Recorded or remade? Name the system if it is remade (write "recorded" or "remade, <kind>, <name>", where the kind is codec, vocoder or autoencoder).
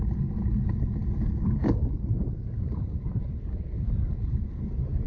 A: remade, vocoder, BigVGAN v2